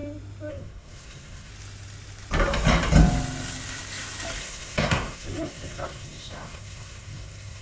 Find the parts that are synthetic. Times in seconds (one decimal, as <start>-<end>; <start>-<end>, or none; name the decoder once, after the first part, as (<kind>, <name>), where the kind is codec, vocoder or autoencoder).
0.5-1.5 (codec, SNAC); 4.4-7.6